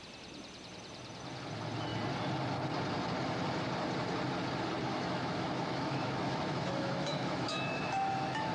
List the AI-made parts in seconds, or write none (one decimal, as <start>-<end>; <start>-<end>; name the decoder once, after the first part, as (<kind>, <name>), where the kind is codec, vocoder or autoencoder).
4.9-8.5 (autoencoder, DAC-VAE)